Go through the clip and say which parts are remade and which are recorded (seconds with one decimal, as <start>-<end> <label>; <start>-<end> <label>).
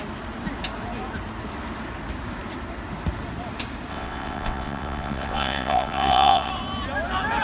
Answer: 0.0-3.9 recorded; 3.9-6.5 remade; 6.5-7.4 recorded